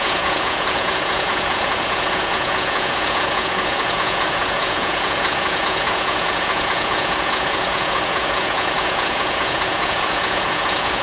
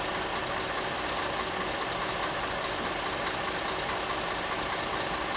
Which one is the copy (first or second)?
first